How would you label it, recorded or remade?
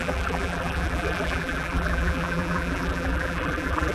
remade